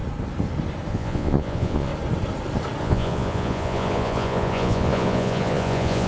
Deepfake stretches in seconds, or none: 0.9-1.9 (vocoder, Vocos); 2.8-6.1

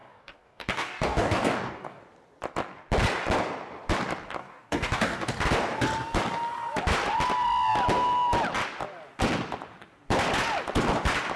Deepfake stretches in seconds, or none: 0.0-2.0 (codec, DAC); 4.4-5.3

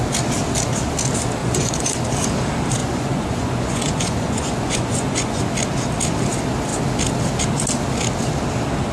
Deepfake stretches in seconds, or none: 1.4-2.0 (vocoder, Vocos); 2.8-5.4

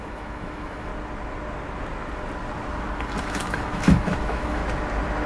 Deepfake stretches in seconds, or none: 0.0-0.9 (autoencoder, DAC-VAE); 3.2-4.6

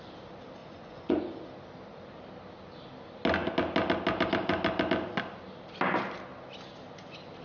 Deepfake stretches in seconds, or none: 0.6-1.2 (vocoder, Vocos)

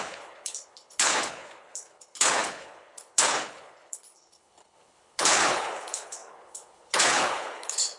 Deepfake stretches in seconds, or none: 0.0-8.0 (codec, HILCodec)

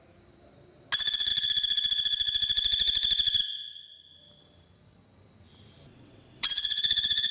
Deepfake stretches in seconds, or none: 5.9-7.3 (vocoder, WaveNeXt)

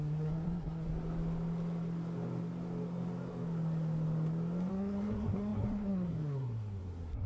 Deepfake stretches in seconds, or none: 0.0-0.9 (codec, SNAC); 4.7-7.3